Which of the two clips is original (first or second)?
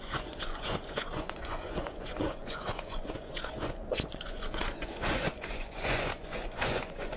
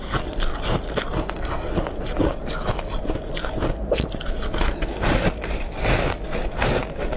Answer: second